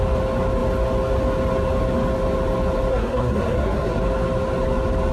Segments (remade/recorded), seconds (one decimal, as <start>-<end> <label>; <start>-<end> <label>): 0.0-2.9 recorded; 2.9-4.0 remade; 4.0-5.1 recorded